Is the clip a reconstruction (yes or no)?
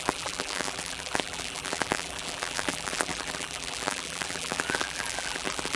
yes